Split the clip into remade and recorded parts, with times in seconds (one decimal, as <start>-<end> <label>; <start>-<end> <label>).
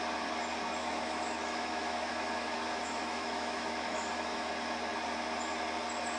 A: 0.0-0.8 recorded; 0.8-4.5 remade; 4.5-6.2 recorded